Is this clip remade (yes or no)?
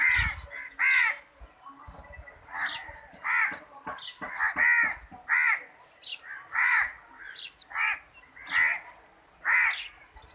no